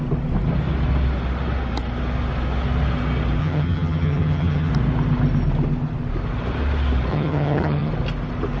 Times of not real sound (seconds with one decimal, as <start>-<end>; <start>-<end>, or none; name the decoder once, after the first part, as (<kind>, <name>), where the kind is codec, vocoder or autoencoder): 3.4-4.7 (vocoder, HiFi-GAN); 7.1-7.9